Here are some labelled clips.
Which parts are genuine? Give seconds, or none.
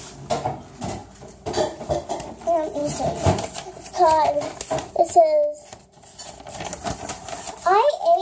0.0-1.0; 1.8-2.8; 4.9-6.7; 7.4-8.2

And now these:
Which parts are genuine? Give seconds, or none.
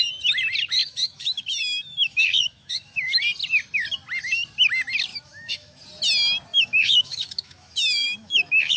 0.0-0.8; 3.2-5.1; 5.8-6.5